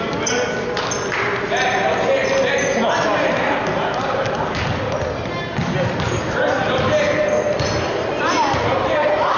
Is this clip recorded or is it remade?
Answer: recorded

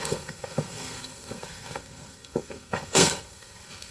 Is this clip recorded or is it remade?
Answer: remade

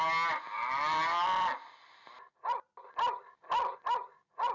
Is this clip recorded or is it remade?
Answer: recorded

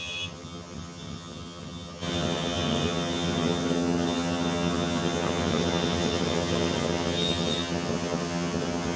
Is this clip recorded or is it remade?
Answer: remade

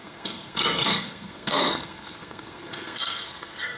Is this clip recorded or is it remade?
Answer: remade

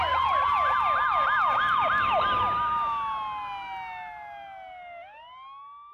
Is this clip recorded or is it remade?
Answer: recorded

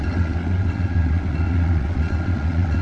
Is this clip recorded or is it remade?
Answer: remade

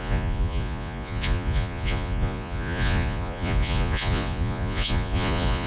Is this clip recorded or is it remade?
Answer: remade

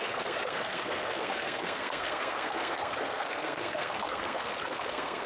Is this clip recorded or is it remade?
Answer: remade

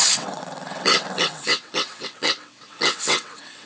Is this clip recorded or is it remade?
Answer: remade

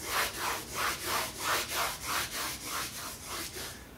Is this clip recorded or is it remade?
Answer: recorded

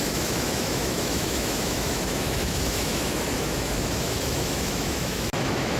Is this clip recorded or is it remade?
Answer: remade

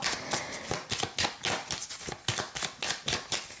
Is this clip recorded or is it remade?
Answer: recorded